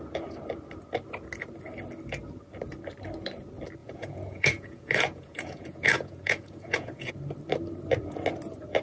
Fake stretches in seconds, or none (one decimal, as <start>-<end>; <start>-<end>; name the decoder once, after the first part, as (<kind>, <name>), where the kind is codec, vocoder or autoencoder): 3.8-7.1 (vocoder, Vocos)